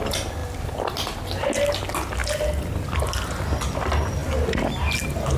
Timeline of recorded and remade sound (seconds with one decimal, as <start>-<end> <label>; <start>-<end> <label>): 0.0-5.4 recorded